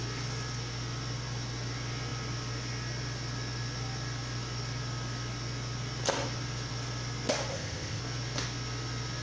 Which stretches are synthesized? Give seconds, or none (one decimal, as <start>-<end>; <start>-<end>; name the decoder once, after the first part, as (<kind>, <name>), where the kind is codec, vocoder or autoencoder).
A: 7.5-8.0 (codec, ZipCodec)